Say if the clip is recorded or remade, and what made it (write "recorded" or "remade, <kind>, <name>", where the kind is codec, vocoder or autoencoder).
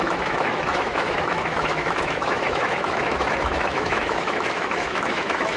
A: remade, autoencoder, DAC-VAE